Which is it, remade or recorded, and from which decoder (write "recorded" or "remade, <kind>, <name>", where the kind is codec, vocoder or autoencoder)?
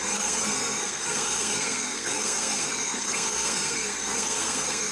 remade, codec, SNAC